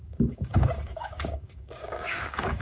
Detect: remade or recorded remade